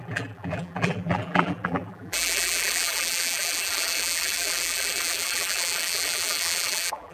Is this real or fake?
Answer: fake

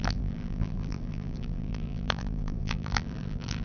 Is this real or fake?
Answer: fake